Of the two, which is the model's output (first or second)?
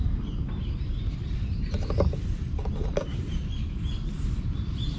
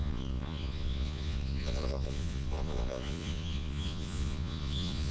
second